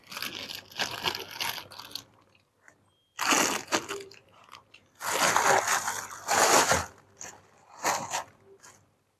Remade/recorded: recorded